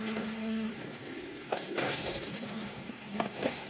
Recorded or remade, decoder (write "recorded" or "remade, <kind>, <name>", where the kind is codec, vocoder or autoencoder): remade, codec, SNAC